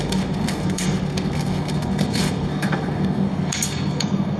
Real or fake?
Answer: fake